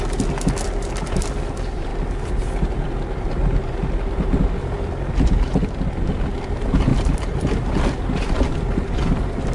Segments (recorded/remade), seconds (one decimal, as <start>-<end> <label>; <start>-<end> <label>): 0.0-9.5 recorded

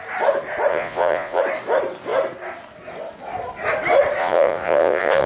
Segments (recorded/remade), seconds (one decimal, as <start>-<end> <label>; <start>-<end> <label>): 0.0-0.7 recorded; 0.7-1.4 remade; 1.4-4.2 recorded; 4.2-5.3 remade

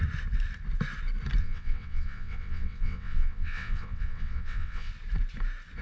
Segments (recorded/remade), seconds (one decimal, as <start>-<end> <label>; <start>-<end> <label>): 0.0-1.4 recorded; 1.4-4.9 remade; 4.9-5.8 recorded

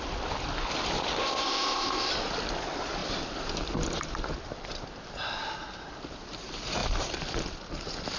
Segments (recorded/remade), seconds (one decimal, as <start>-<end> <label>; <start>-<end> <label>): 0.0-1.2 recorded; 1.2-2.1 remade; 2.1-8.2 recorded

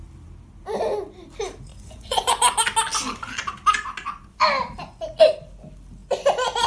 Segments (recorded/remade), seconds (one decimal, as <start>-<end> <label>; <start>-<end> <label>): 0.0-1.7 recorded; 1.7-2.3 remade; 2.3-6.7 recorded